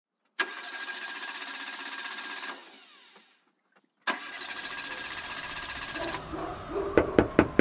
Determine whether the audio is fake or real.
real